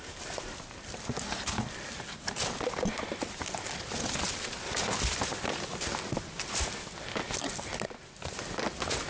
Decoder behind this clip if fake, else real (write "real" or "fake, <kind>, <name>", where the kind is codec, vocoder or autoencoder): real